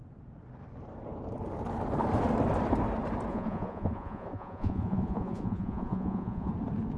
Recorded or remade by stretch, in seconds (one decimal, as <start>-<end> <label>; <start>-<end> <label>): 0.0-3.3 recorded; 3.3-6.5 remade; 6.5-7.0 recorded